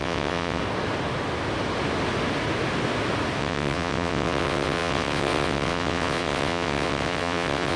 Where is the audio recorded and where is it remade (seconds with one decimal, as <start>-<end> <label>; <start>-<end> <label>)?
0.0-0.6 remade; 0.6-3.4 recorded; 3.4-7.8 remade